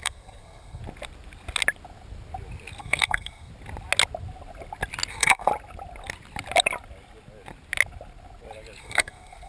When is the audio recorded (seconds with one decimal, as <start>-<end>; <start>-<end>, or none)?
0.8-2.8; 3.5-5.1; 5.5-8.8